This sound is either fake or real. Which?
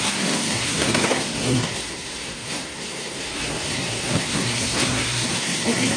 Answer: fake